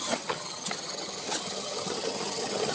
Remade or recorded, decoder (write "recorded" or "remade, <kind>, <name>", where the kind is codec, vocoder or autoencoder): remade, vocoder, HiFi-GAN